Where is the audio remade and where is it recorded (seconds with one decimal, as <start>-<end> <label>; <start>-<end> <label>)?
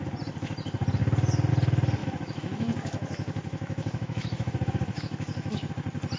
0.0-2.0 recorded; 2.0-5.7 remade; 5.7-6.2 recorded